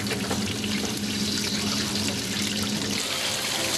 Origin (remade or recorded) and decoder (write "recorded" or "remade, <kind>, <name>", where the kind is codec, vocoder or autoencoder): recorded